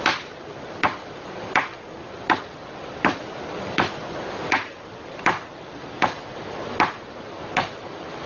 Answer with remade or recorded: remade